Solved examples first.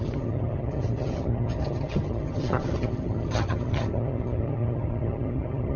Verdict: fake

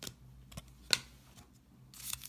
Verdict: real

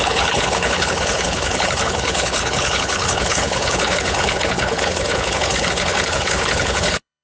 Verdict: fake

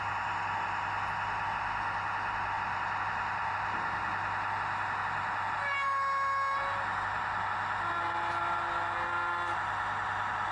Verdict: real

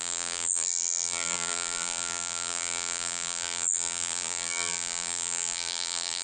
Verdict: fake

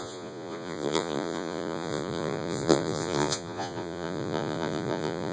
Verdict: fake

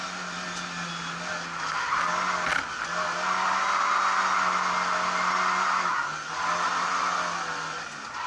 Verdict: real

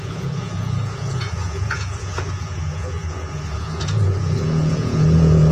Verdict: fake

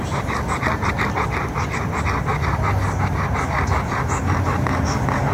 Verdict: real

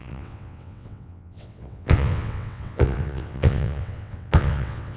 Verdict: fake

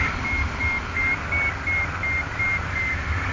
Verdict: real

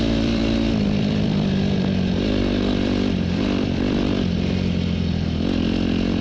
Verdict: fake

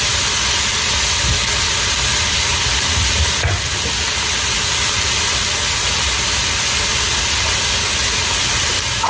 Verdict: real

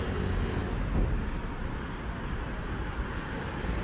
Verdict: fake